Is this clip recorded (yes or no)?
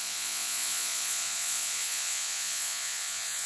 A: no